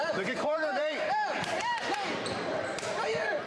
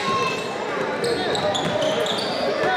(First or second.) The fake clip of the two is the first